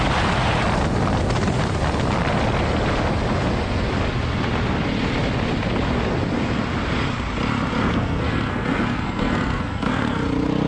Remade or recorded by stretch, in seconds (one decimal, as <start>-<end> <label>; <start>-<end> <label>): 0.0-7.9 recorded; 7.9-10.0 remade; 10.0-10.7 recorded